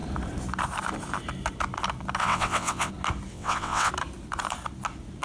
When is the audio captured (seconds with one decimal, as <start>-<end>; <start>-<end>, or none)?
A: 0.0-2.2; 2.9-3.3; 3.9-5.2

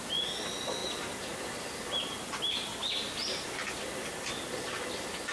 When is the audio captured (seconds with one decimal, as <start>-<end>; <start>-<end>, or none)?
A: 0.0-5.3

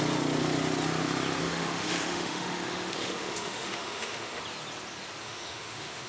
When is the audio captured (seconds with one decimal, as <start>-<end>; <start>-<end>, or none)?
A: 0.0-1.4; 4.4-5.2

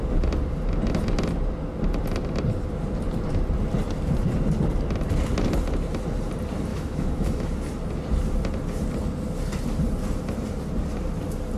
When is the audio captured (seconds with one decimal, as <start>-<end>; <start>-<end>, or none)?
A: 0.0-6.7; 7.5-11.6